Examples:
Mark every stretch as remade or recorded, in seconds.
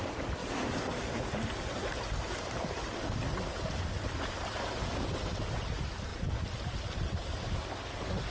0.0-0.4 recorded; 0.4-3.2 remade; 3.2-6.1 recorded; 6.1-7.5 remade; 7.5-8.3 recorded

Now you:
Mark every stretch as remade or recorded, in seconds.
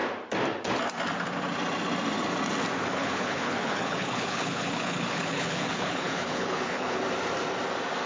0.0-2.9 recorded; 2.9-7.0 remade; 7.0-8.1 recorded